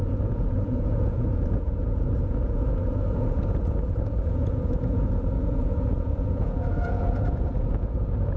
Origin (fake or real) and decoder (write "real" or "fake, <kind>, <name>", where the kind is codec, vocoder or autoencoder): fake, vocoder, Vocos